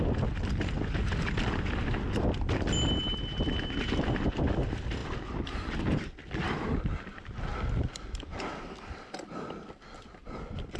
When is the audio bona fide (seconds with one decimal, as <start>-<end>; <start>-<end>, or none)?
0.0-10.8